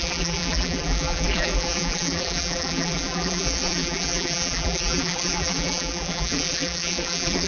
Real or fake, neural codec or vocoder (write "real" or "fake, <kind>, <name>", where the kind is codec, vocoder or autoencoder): fake, vocoder, BigVGAN v2